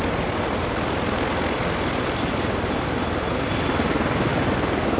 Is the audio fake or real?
real